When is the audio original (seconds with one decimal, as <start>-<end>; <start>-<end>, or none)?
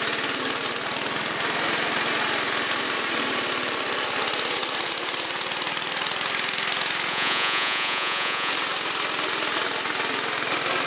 0.0-7.1; 8.5-10.9